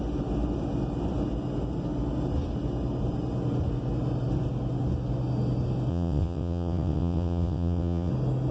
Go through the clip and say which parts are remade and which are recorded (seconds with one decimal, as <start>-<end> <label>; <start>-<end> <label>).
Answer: 0.0-5.9 recorded; 5.9-8.1 remade; 8.1-8.5 recorded